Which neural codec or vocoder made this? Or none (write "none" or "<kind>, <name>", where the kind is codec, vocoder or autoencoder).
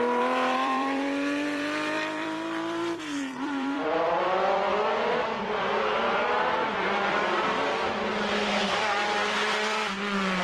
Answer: vocoder, BigVGAN v2